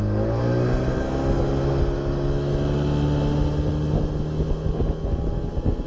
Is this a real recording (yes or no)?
yes